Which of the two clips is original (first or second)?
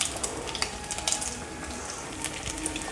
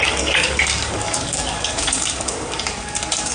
first